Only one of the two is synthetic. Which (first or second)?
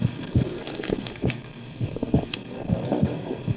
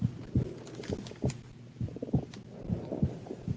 first